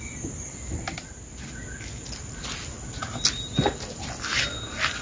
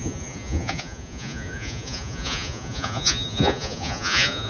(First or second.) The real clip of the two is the first